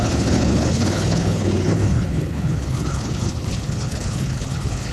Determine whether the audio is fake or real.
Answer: fake